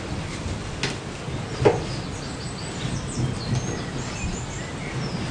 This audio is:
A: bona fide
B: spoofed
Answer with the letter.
A